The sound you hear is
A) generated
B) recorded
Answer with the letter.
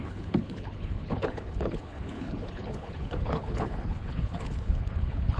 A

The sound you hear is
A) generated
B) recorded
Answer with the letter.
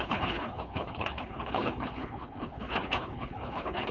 A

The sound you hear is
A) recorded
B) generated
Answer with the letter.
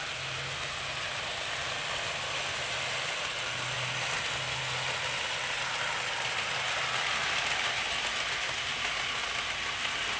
A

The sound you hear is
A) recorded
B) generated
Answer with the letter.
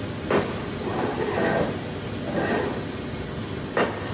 A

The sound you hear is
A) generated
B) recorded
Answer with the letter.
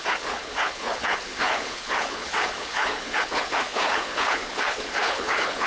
A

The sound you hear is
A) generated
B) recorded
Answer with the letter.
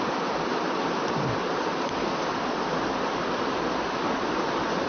B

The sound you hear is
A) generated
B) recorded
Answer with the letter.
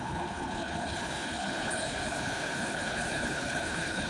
A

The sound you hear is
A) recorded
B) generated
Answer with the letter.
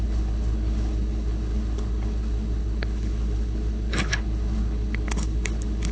B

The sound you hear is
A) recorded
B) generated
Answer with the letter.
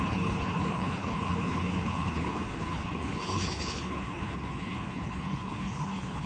B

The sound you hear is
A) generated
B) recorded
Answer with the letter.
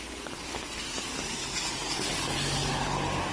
B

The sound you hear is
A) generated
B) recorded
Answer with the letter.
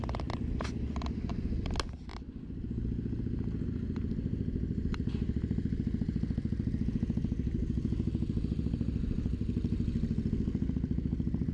B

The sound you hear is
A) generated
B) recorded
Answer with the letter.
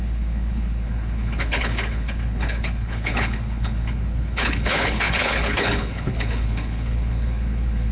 A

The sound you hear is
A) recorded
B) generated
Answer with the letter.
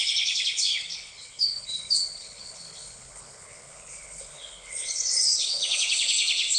B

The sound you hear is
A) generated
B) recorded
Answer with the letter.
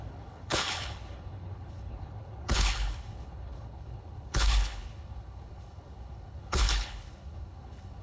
A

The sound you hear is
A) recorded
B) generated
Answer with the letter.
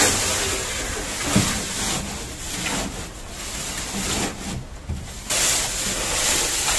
A